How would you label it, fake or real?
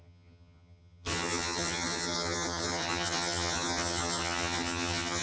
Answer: fake